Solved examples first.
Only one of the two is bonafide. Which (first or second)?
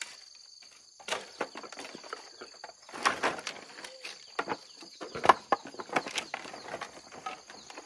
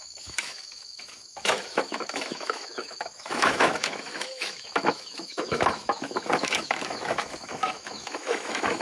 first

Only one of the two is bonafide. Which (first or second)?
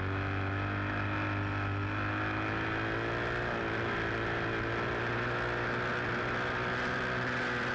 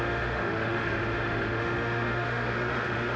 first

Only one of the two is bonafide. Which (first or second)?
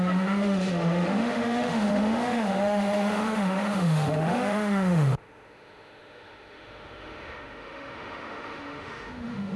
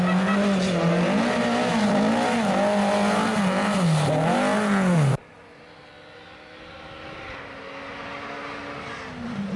second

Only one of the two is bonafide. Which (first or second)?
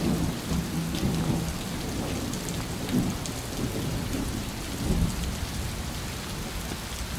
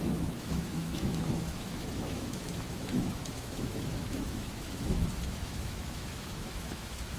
first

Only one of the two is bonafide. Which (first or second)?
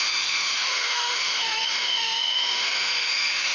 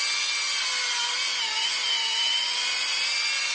second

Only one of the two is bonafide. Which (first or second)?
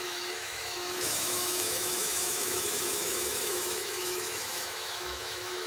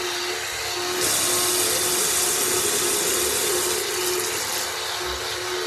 second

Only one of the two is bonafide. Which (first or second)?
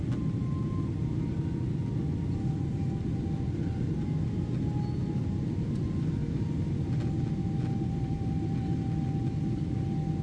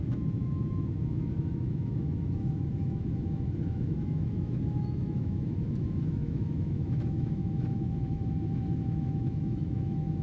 first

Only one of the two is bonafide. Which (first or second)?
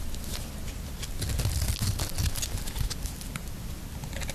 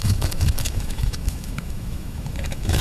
first